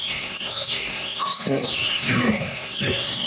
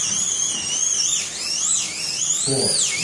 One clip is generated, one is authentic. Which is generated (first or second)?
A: first